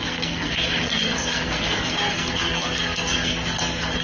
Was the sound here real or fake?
fake